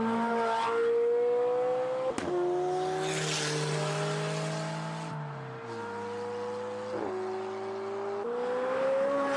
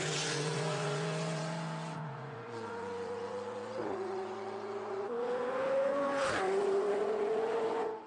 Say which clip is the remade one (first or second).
second